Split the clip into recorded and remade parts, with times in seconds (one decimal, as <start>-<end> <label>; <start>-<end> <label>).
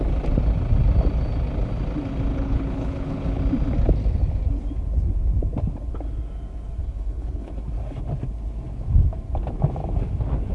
0.0-2.3 recorded; 2.3-3.4 remade; 3.4-6.8 recorded; 6.8-7.5 remade; 7.5-10.5 recorded